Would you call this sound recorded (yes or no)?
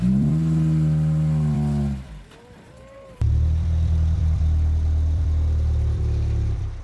no